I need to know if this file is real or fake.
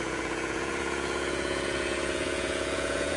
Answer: fake